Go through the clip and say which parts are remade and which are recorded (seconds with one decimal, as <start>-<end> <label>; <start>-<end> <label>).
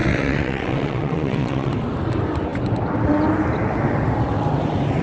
0.0-1.7 remade; 1.7-5.0 recorded